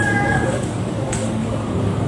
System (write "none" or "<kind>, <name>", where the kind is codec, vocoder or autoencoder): codec, DAC